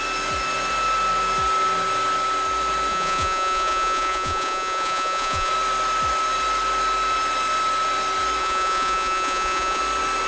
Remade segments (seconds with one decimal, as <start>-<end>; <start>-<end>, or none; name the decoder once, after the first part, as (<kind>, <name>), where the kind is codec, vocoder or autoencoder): 2.9-5.5 (vocoder, Vocos); 8.4-9.8